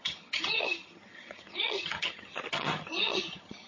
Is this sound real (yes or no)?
no